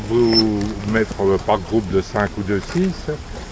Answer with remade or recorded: recorded